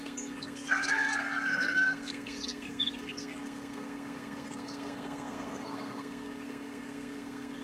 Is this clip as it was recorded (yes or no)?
no